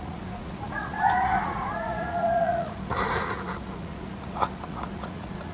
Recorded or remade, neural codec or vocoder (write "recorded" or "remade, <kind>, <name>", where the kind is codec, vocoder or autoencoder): remade, vocoder, Vocos